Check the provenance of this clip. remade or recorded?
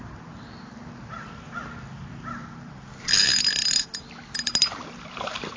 recorded